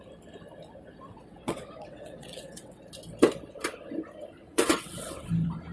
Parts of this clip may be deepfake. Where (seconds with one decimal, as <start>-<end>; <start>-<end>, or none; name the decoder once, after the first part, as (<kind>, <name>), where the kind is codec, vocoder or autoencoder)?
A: 1.1-2.8 (vocoder, WaveNeXt); 4.4-5.3